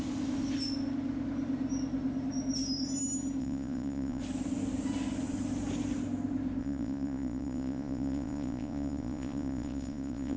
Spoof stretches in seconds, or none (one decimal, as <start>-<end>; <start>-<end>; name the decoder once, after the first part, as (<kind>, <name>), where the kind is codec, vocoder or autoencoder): 3.4-4.2 (vocoder, Vocos); 6.6-10.4